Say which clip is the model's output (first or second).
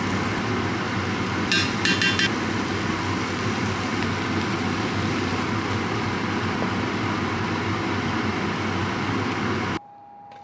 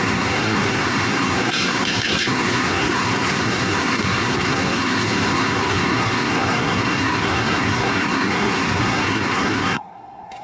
second